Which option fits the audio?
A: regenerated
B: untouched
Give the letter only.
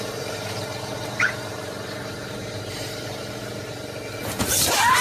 A